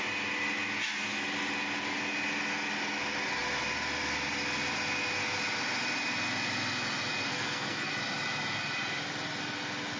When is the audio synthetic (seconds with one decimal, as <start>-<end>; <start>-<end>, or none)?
7.3-7.9

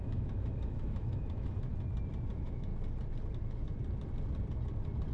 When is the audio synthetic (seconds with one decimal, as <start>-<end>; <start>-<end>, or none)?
0.0-1.7; 2.3-2.7

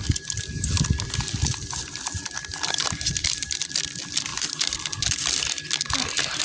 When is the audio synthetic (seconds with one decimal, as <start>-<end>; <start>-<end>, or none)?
2.4-3.8

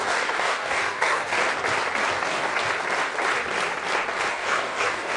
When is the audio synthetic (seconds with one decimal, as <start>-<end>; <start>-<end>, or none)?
0.0-1.4; 2.1-2.5; 4.3-5.2

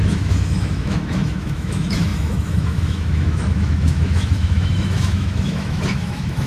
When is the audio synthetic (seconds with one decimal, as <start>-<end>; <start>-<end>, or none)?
0.0-6.5